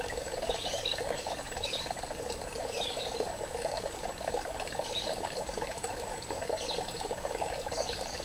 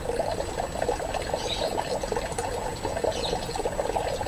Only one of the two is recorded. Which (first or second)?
second